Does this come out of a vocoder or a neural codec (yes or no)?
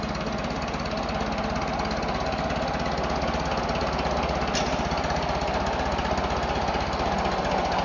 no